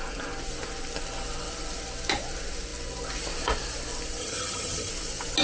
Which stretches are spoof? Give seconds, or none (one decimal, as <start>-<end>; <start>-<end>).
4.2-4.9